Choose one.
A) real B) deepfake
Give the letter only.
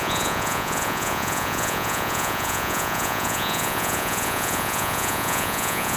B